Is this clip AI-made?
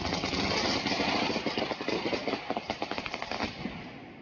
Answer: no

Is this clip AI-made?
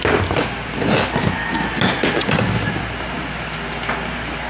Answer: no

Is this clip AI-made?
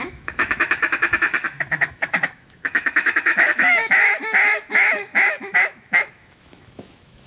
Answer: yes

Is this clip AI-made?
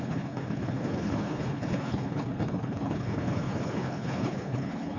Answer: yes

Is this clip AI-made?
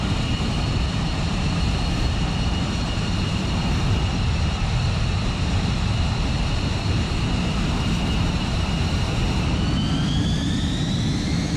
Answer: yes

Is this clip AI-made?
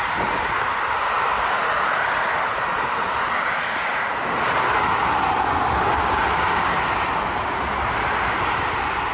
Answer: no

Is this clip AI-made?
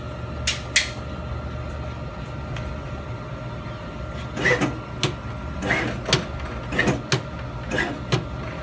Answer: no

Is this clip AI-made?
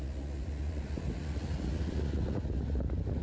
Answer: yes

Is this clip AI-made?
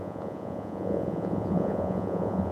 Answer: yes